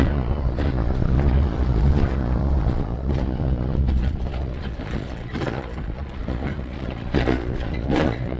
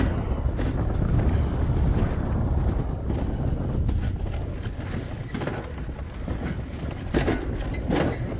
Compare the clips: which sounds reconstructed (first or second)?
first